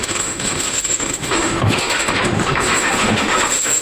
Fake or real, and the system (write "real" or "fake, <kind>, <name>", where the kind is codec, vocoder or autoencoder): fake, autoencoder, DAC-VAE